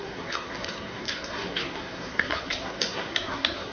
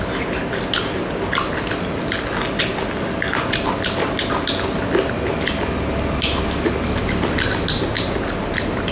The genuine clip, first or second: second